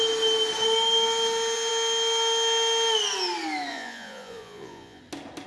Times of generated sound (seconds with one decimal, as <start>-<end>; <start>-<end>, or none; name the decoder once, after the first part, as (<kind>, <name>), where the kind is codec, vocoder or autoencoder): 3.7-5.0 (vocoder, Vocos)